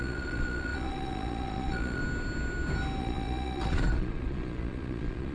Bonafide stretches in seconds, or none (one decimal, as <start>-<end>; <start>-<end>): 2.0-3.0